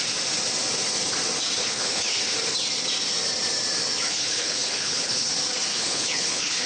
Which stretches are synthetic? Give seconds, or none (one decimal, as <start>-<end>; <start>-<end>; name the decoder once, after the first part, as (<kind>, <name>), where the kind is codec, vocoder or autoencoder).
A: 1.6-2.2 (codec, HILCodec); 4.1-5.3; 5.7-6.7